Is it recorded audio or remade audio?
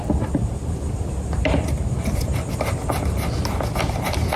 recorded